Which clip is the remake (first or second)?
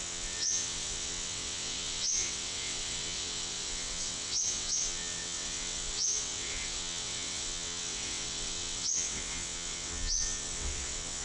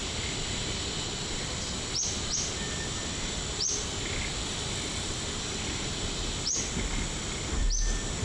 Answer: first